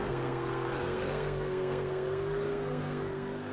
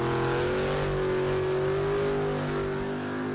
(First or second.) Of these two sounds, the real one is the second